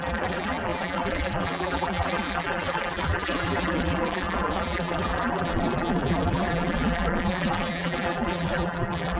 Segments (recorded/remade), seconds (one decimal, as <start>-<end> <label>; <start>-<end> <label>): 0.0-9.2 remade